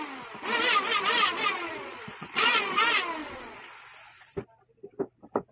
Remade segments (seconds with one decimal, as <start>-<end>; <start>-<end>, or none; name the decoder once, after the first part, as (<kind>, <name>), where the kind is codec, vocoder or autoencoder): 1.2-2.8 (vocoder, Vocos); 3.2-3.7